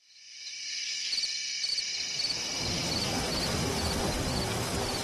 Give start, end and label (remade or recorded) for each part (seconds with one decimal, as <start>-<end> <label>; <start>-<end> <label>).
0.0-5.0 recorded